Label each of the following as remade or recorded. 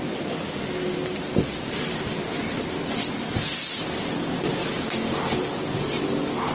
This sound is recorded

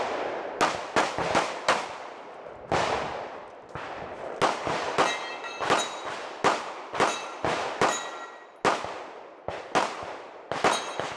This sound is recorded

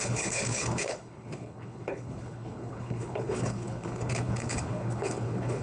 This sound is remade